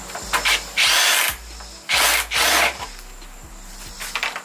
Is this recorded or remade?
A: recorded